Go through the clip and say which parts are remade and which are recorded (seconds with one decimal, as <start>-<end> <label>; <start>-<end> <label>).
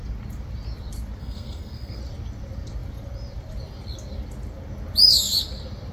0.0-1.2 recorded; 1.2-2.0 remade; 2.0-5.9 recorded